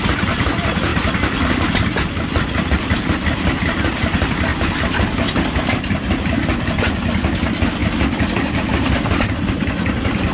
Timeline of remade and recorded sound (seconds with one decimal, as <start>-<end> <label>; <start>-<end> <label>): 0.0-4.5 remade; 4.5-5.6 recorded; 5.6-10.3 remade

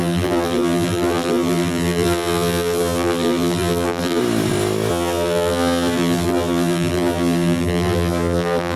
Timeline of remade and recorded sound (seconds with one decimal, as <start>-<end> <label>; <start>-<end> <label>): 0.0-4.2 remade; 4.2-4.9 recorded; 4.9-8.8 remade